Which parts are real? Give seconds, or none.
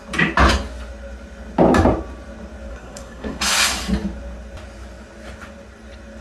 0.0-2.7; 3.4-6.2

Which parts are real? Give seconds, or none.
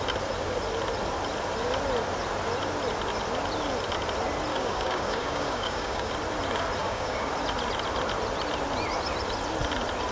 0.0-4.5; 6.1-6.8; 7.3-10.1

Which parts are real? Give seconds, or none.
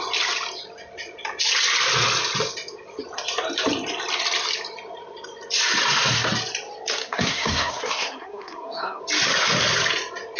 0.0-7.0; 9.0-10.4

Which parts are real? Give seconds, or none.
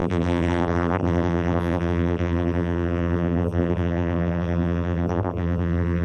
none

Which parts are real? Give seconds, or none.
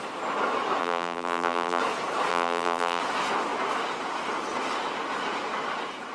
0.0-0.8; 1.8-2.3; 3.0-6.1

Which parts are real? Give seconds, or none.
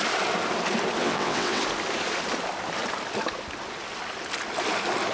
0.0-1.0; 1.6-5.1